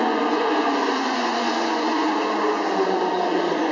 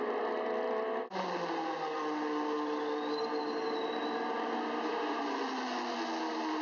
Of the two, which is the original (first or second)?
second